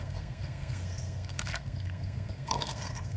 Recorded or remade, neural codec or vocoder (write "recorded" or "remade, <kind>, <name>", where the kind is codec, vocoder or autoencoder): remade, codec, SNAC